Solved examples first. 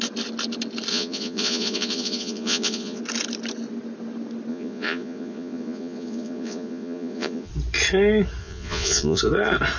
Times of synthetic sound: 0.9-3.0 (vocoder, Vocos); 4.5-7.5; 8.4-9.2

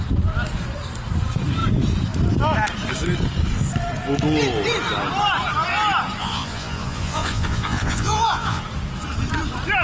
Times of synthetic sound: 6.2-8.6 (vocoder, Vocos)

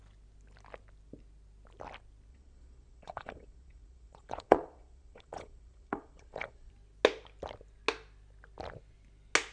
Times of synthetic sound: 2.3-6.7 (vocoder, Vocos)

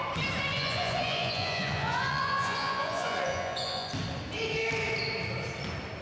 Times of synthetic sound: 0.5-3.9 (vocoder, Vocos)

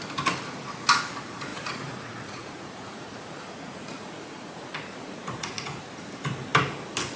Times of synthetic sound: 1.5-5.8 (vocoder, Vocos)